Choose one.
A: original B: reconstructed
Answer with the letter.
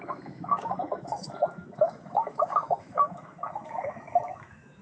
B